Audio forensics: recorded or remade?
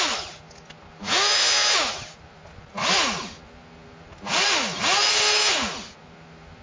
recorded